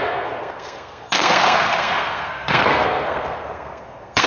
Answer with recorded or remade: remade